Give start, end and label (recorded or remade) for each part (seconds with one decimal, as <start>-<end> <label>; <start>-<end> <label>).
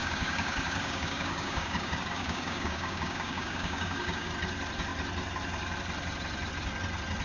0.0-4.3 remade; 4.3-7.2 recorded